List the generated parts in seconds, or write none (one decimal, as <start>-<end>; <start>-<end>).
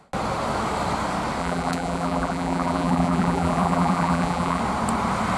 1.4-4.6